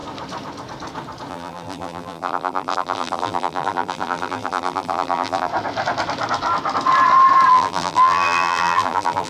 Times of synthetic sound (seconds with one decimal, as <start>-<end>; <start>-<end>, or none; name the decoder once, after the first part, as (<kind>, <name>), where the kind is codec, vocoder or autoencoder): 1.3-5.5 (vocoder, BigVGAN v2); 7.5-9.3